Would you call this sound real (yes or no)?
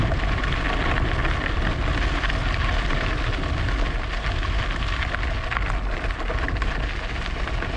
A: yes